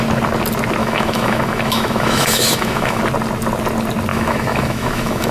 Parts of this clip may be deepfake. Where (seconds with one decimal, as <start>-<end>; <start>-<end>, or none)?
0.8-3.0; 4.1-5.3